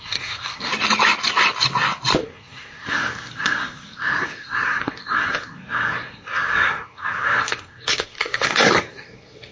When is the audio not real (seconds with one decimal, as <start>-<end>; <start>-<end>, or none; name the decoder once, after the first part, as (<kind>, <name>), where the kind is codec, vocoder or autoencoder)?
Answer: 0.0-0.7 (codec, SNAC); 2.2-9.5